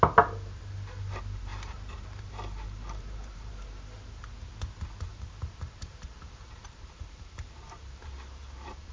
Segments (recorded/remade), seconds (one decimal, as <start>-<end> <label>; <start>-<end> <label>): 0.0-1.5 recorded; 1.5-3.5 remade; 3.5-5.1 recorded; 5.1-8.9 remade